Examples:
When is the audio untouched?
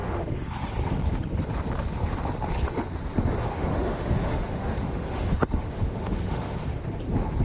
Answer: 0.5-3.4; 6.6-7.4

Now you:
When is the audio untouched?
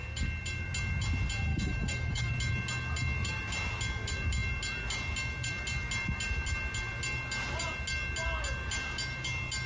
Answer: 0.0-1.5; 2.3-9.7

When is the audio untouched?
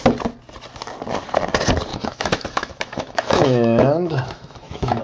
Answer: 0.0-1.9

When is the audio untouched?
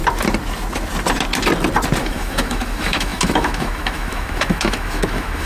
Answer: 0.0-2.0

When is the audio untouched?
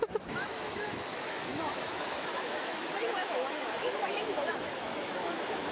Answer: none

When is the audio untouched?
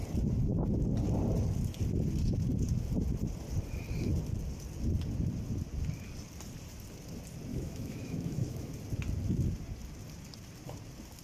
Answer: 0.0-7.5; 8.7-11.2